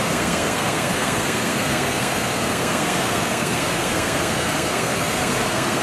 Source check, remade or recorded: remade